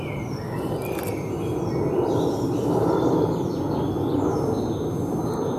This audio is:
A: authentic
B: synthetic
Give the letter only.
A